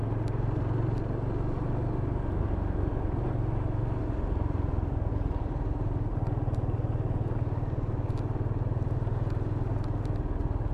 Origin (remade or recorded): recorded